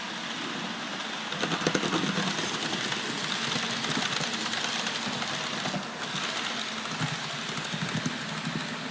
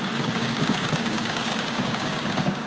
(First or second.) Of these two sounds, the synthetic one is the second